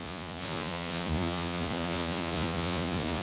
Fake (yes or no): yes